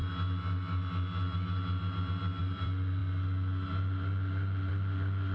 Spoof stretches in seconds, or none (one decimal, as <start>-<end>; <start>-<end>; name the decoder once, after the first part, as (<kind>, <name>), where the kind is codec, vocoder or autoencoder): 2.4-3.0 (vocoder, BigVGAN v2); 4.7-5.3